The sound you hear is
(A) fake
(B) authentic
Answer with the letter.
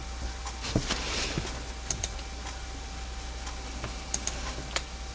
B